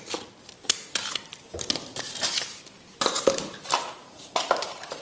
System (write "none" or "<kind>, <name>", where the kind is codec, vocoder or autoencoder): vocoder, BigVGAN v2